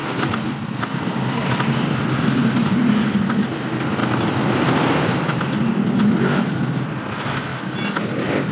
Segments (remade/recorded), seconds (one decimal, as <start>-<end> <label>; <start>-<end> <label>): 0.0-1.4 remade; 1.4-2.4 recorded; 2.4-3.4 remade; 3.4-4.0 recorded; 4.0-6.6 remade; 6.6-8.5 recorded